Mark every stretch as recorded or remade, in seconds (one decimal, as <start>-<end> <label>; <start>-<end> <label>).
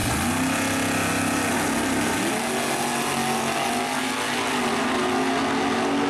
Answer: 0.0-6.1 recorded